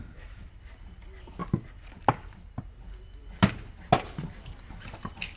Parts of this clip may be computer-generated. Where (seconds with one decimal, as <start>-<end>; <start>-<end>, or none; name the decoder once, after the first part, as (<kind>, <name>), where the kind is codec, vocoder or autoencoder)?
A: none